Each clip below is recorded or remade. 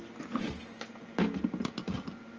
recorded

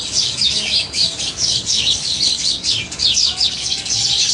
remade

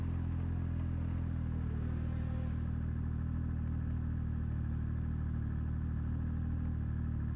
recorded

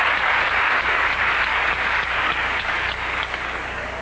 remade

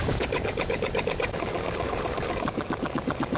remade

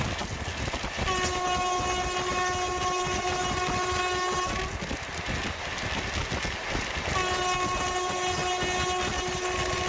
recorded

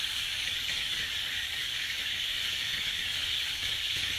remade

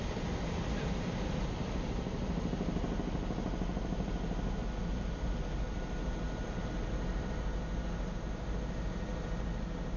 recorded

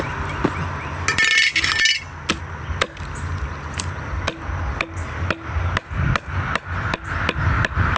recorded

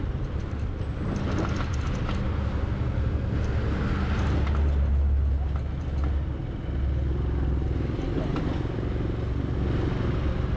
recorded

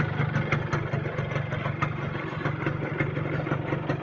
recorded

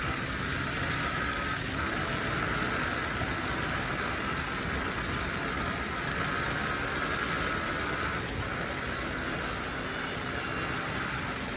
recorded